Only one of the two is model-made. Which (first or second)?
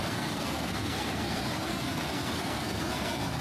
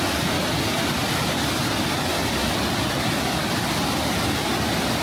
first